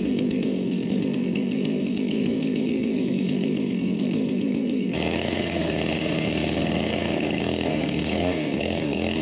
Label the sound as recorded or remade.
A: remade